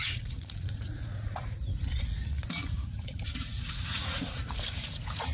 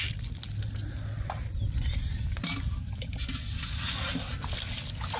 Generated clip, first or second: first